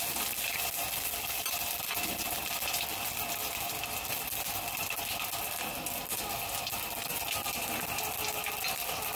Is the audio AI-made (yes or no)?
no